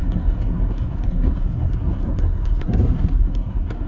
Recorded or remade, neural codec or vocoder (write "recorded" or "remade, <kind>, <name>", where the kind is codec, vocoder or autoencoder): remade, codec, SNAC